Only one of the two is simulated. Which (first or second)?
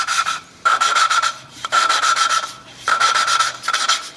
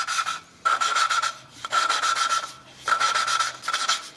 first